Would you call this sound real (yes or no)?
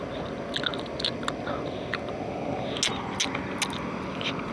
yes